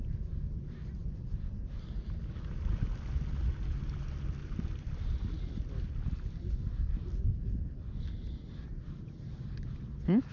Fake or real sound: real